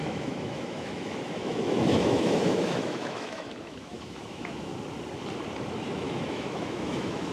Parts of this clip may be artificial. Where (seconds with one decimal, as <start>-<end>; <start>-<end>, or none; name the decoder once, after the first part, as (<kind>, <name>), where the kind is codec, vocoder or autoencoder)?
0.0-4.7 (autoencoder, DAC-VAE); 5.9-7.3